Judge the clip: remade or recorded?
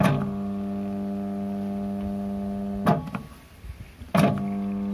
recorded